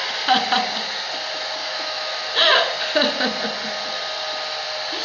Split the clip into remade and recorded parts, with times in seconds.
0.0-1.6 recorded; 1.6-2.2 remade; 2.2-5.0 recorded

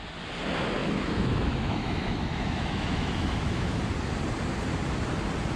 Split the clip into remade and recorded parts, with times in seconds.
0.0-0.8 recorded; 0.8-3.8 remade; 3.8-5.6 recorded

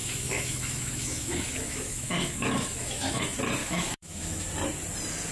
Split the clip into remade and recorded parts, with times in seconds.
0.0-3.2 remade; 3.2-3.6 recorded; 3.6-4.4 remade; 4.4-5.3 recorded

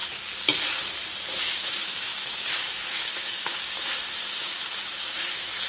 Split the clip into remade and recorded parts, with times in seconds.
0.0-1.4 recorded; 1.4-5.7 remade